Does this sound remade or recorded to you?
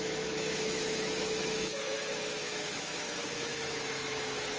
remade